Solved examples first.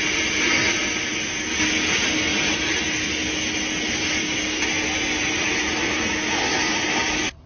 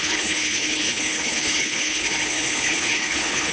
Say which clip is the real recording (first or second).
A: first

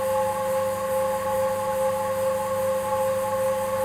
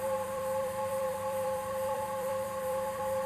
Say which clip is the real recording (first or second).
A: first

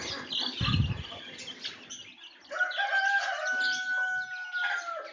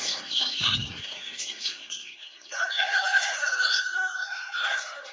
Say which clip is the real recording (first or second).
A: first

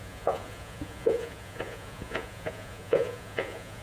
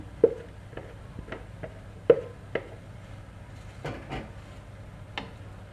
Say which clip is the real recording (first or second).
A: second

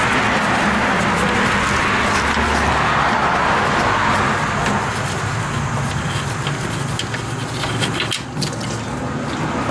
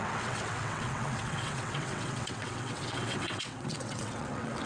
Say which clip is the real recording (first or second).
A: first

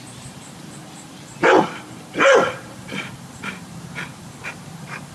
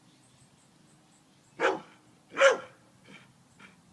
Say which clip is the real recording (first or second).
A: second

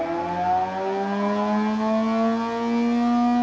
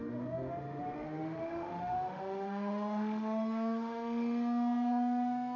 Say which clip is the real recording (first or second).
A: first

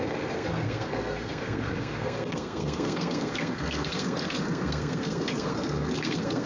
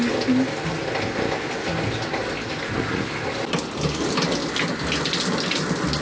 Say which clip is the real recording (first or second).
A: second